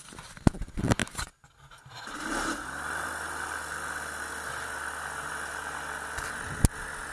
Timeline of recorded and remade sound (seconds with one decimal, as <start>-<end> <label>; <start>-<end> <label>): 0.0-7.1 recorded